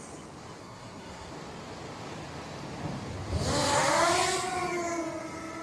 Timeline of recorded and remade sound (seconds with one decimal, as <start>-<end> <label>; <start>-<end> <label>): 0.0-0.6 recorded; 0.6-1.3 remade; 1.3-5.6 recorded